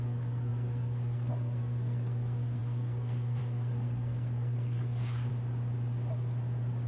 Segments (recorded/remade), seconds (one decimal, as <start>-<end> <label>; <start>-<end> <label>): 0.0-5.3 remade; 5.3-6.9 recorded